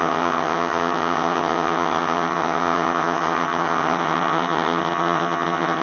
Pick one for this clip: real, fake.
fake